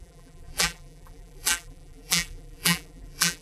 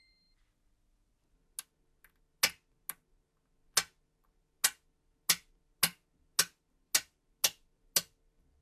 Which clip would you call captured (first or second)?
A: second